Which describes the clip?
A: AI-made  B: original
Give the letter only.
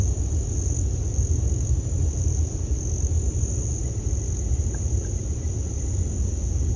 B